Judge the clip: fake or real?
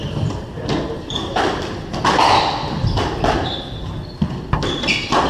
real